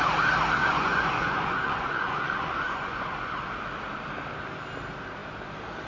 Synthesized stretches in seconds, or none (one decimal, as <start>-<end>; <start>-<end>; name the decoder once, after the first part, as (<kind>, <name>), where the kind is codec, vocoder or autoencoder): 0.6-3.3 (vocoder, Vocos)